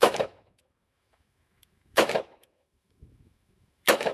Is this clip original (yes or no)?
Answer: no